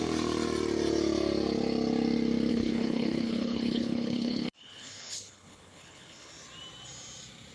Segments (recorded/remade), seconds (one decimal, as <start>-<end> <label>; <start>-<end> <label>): 0.0-2.5 recorded; 2.5-6.3 remade; 6.3-7.5 recorded